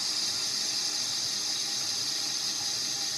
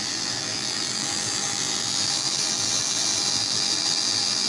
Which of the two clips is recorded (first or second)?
first